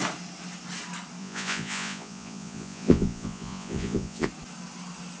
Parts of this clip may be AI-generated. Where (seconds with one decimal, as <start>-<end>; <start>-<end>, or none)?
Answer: 1.2-4.3